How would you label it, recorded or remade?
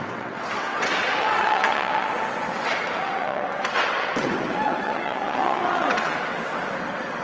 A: remade